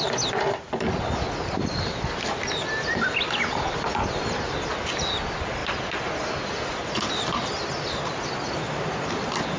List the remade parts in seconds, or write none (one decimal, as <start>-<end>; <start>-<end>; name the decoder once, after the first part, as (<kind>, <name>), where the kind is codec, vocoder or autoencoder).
none